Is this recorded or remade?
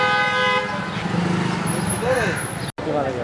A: recorded